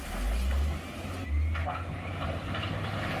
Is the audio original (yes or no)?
yes